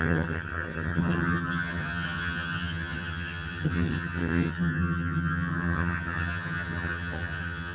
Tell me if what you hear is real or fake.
fake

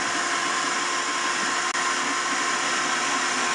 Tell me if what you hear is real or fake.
real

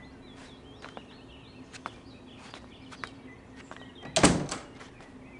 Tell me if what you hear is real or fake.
real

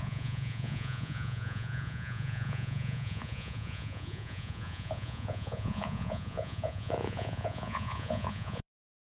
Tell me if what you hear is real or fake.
fake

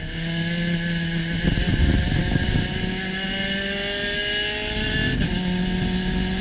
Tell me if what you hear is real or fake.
real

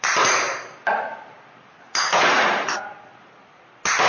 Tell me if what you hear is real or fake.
real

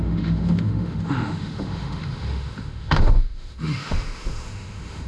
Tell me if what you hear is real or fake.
fake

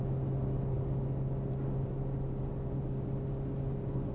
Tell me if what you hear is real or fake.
real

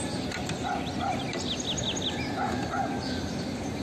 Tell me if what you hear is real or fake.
real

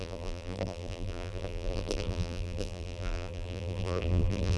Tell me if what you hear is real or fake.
fake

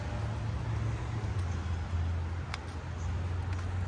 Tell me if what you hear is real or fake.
real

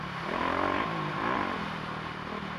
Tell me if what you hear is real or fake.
real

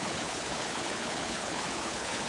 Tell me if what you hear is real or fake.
fake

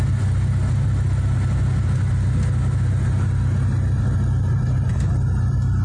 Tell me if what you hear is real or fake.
real